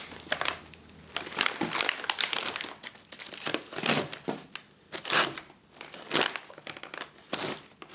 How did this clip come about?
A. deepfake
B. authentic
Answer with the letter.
B